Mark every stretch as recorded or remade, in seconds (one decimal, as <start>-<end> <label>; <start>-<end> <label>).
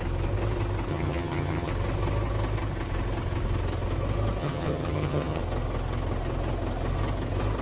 0.0-0.9 recorded; 0.9-1.7 remade; 1.7-4.4 recorded; 4.4-5.4 remade; 5.4-7.6 recorded